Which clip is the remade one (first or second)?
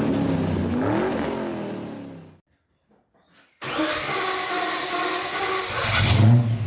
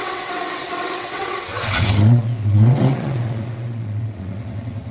second